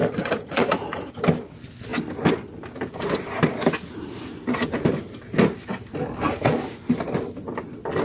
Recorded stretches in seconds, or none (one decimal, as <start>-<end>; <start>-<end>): 1.1-8.0